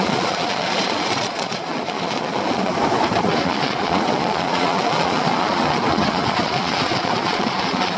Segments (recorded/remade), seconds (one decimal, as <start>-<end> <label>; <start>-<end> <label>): 0.0-2.7 remade; 2.7-3.2 recorded; 3.2-8.0 remade